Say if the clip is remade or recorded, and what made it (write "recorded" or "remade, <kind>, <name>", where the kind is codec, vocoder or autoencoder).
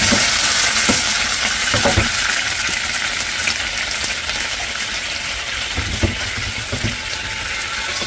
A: recorded